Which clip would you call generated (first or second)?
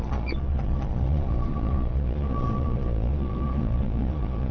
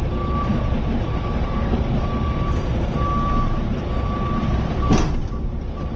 first